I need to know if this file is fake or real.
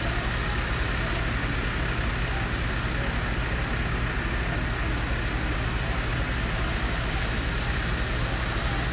real